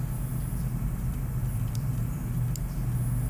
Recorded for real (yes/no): yes